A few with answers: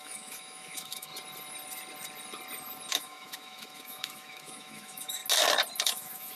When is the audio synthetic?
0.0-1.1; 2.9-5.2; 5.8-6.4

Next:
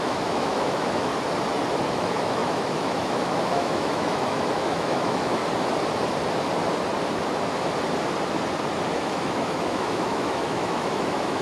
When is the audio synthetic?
0.0-1.1; 1.9-5.4; 8.9-11.4

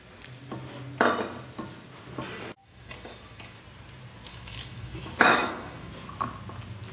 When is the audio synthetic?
2.6-3.6; 4.3-5.9

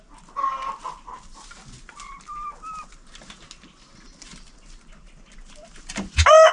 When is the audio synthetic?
none